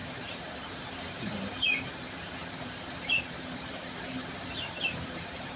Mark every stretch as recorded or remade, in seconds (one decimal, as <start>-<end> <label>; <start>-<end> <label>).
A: 0.0-5.6 remade